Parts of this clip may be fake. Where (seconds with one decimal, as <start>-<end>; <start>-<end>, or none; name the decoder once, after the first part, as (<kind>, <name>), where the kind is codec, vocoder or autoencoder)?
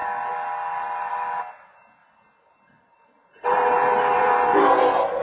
2.0-5.2 (vocoder, BigVGAN v2)